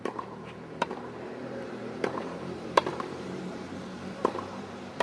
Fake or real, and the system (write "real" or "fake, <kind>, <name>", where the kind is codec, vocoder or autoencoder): fake, vocoder, BigVGAN v2